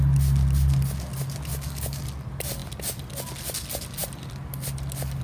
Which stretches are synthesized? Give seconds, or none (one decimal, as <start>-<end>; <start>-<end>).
1.5-2.0